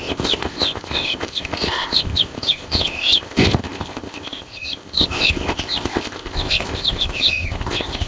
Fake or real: fake